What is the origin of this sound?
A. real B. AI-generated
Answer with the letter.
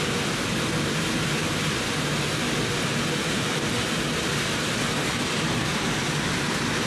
A